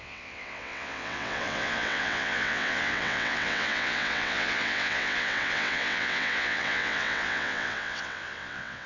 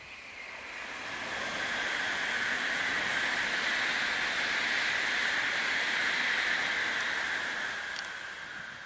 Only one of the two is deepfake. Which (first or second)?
first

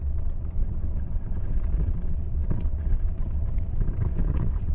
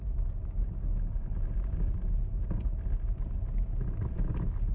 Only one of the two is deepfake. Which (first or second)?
first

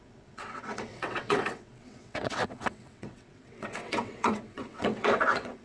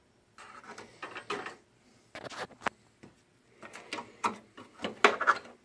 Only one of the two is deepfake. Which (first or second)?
first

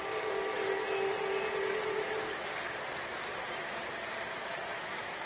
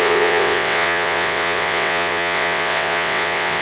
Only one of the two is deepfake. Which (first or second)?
second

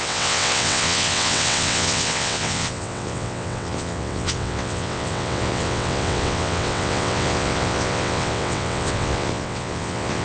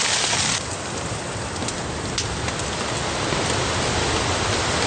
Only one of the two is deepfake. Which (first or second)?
first